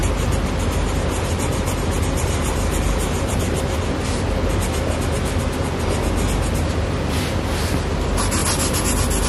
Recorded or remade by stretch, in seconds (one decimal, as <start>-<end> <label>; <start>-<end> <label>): 0.0-3.7 remade; 3.7-9.3 recorded